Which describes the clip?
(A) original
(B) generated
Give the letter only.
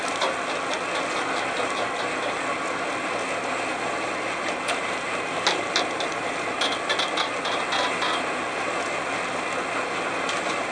A